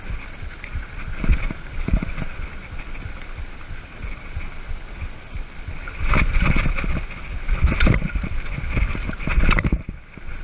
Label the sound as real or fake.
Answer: real